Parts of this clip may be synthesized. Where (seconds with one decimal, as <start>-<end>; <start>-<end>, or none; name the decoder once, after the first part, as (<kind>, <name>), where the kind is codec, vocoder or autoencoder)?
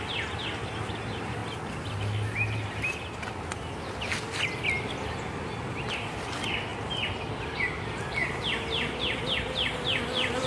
8.2-9.2 (vocoder, BigVGAN v2)